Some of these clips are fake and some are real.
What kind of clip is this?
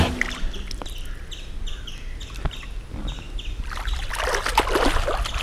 real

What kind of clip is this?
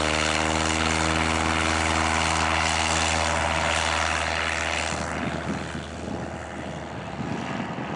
real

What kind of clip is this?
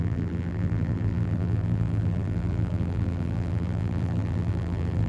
fake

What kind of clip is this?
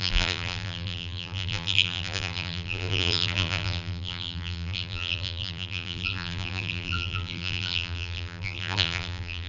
fake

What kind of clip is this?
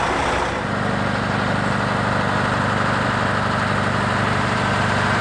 real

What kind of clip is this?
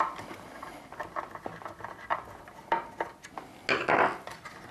real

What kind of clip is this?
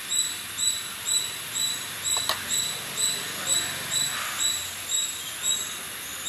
real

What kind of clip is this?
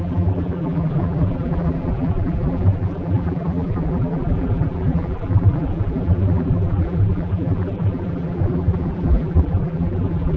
fake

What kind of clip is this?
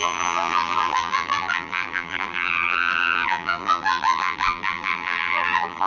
fake